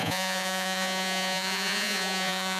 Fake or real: fake